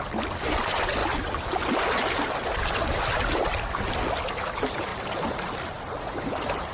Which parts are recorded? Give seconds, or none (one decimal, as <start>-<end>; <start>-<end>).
0.0-6.7